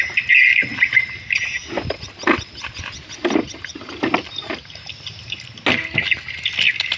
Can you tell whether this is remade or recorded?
recorded